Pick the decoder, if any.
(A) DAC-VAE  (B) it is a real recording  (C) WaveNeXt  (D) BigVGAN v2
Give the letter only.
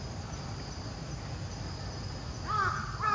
B